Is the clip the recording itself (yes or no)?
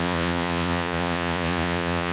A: no